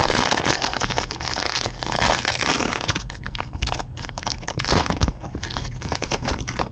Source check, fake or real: fake